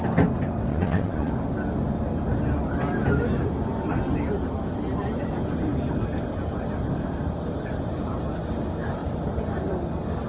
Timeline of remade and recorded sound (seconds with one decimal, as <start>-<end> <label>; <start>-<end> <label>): 0.0-0.7 recorded; 0.7-1.3 remade; 1.3-10.3 recorded